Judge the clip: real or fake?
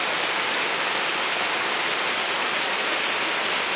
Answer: real